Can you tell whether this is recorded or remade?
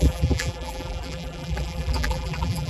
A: remade